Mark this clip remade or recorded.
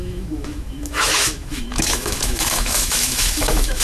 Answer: remade